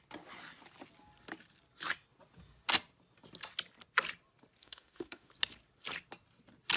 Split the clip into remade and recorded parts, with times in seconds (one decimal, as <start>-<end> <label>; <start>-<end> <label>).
0.0-4.6 recorded; 4.6-5.3 remade; 5.3-6.8 recorded